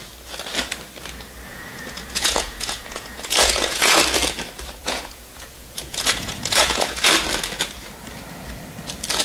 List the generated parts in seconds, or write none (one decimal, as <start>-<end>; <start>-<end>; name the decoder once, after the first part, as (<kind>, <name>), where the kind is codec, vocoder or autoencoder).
1.5-4.0 (vocoder, Vocos); 4.8-7.1